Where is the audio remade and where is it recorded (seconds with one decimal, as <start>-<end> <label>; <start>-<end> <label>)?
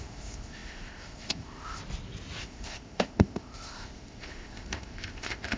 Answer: 0.0-1.8 remade; 1.8-2.4 recorded; 2.4-5.6 remade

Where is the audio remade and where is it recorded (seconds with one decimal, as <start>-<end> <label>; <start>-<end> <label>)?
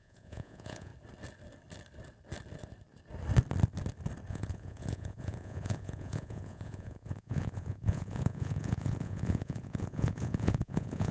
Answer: 0.0-0.9 remade; 0.9-4.3 recorded; 4.3-11.1 remade